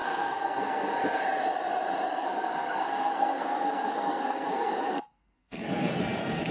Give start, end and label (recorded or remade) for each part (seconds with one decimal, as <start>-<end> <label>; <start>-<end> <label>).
0.0-1.2 remade; 1.2-2.1 recorded; 2.1-6.0 remade; 6.0-6.5 recorded